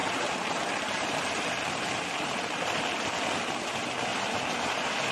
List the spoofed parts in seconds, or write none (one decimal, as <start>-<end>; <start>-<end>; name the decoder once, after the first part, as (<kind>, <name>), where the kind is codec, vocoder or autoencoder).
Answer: 0.0-3.1 (vocoder, BigVGAN v2)

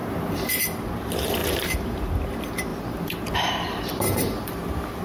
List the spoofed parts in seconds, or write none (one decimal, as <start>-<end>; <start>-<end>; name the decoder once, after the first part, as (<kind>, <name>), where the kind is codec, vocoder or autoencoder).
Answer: 0.0-0.6 (vocoder, BigVGAN v2); 1.4-2.1; 2.7-4.5

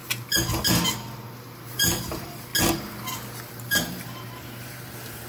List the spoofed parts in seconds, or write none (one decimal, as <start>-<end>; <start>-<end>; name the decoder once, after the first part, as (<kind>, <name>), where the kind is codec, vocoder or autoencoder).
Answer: 1.7-2.5 (vocoder, BigVGAN v2); 3.5-5.3

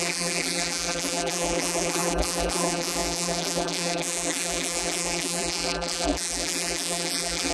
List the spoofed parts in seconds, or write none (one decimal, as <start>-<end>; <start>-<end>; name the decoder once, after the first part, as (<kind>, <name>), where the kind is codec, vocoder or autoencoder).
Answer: 0.0-7.5 (vocoder, BigVGAN v2)

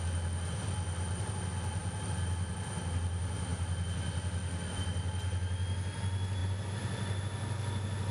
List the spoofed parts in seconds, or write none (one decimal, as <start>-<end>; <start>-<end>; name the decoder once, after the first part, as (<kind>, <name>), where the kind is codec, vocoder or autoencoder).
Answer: none

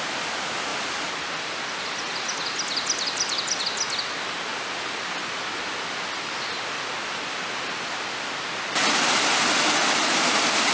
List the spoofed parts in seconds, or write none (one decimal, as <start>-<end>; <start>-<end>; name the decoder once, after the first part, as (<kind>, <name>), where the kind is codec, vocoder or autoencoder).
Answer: 0.7-3.6 (vocoder, BigVGAN v2)

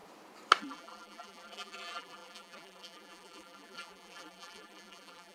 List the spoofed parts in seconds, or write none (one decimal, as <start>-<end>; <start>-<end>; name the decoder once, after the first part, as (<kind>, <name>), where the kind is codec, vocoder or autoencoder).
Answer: 0.6-5.3 (vocoder, BigVGAN v2)

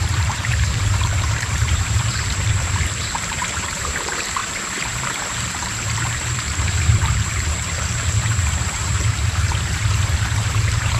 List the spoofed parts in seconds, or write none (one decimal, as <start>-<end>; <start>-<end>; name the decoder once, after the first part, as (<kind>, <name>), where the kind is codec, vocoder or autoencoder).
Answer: 0.0-11.0 (vocoder, BigVGAN v2)